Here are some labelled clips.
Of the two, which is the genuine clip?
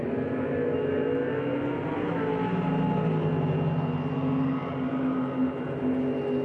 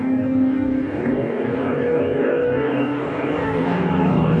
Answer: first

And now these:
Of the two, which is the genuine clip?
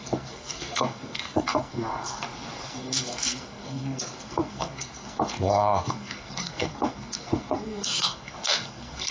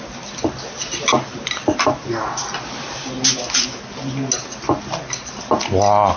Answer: second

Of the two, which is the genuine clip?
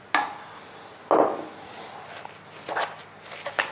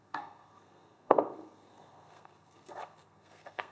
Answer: first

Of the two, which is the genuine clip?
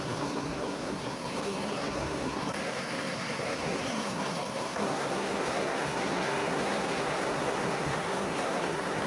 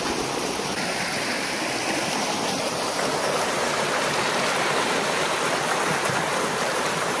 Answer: second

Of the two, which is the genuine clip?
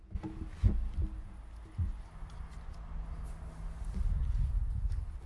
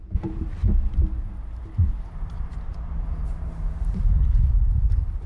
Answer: first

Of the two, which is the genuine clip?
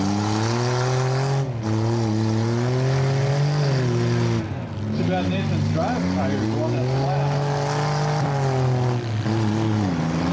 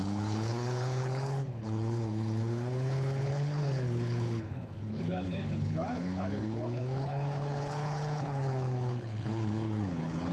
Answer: first